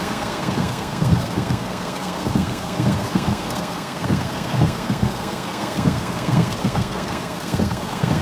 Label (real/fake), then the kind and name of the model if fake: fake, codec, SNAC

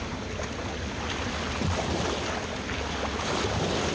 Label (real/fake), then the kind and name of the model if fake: real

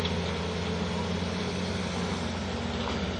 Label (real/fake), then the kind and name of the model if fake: real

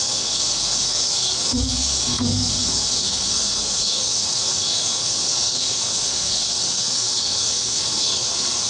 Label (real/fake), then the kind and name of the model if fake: fake, codec, SNAC